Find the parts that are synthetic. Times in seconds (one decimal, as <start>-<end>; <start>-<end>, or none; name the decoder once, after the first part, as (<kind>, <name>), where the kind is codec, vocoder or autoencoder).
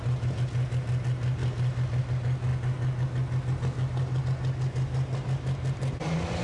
none